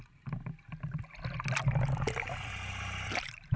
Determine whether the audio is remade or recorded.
recorded